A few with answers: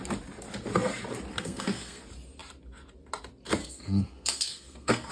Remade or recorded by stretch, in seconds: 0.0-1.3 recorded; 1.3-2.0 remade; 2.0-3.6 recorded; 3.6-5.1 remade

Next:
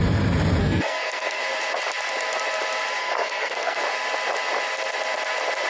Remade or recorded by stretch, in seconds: 0.0-0.6 recorded; 0.6-1.4 remade; 1.4-3.0 recorded; 3.0-3.8 remade; 3.8-5.7 recorded